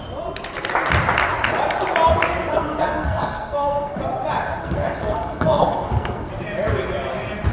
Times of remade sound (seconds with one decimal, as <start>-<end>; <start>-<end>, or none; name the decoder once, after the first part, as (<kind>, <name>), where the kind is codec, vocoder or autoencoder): 2.5-4.0 (codec, SNAC); 4.6-6.3

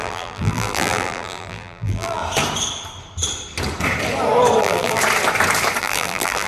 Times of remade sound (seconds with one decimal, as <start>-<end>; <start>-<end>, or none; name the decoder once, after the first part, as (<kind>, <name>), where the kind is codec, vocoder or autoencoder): 0.0-2.2 (vocoder, BigVGAN v2); 4.6-5.0; 5.8-6.5

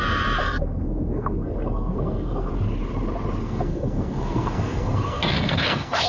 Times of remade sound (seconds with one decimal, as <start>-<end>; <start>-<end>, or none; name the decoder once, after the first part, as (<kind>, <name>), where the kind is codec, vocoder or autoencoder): 0.4-2.5 (codec, SNAC); 3.4-6.1

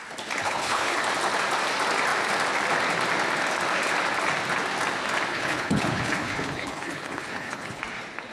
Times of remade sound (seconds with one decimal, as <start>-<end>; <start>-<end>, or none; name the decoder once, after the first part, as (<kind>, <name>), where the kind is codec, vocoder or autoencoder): 0.4-1.0 (codec, HILCodec); 5.3-7.8

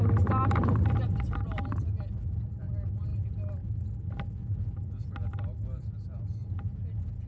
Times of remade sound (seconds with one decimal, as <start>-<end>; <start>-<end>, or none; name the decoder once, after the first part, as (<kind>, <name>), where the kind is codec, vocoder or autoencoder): 6.4-7.3 (vocoder, Vocos)

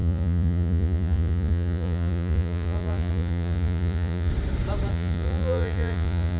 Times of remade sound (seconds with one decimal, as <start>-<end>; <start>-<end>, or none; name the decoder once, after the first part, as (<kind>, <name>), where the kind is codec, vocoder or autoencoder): 0.0-4.3 (vocoder, Vocos); 4.9-6.4